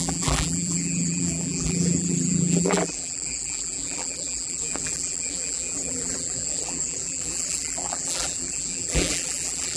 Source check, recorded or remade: remade